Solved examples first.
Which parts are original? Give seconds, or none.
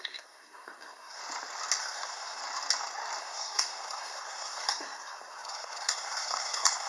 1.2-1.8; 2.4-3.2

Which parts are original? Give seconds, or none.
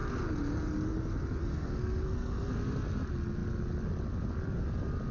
0.0-1.4; 2.5-5.1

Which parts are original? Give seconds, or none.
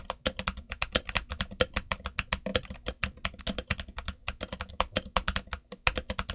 0.0-6.3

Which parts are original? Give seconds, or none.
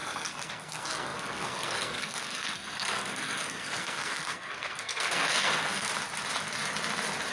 5.9-7.3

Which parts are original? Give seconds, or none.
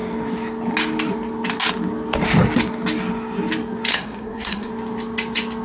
0.0-3.9; 4.7-5.6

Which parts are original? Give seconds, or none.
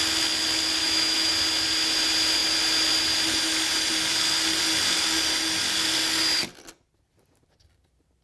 0.0-0.8; 1.3-8.2